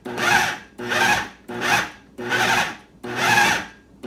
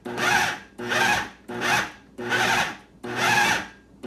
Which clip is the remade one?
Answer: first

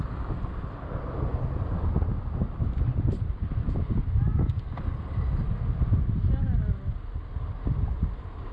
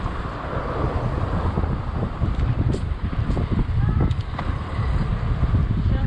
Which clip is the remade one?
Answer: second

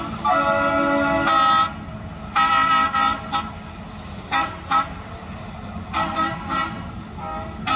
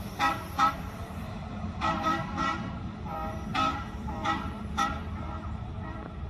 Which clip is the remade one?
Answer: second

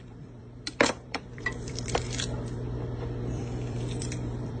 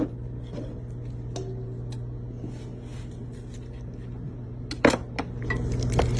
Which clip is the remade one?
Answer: first